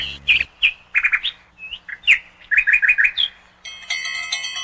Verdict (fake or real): real